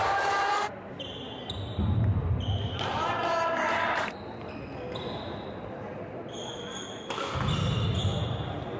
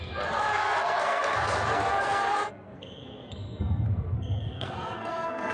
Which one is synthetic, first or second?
second